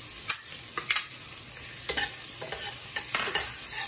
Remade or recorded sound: recorded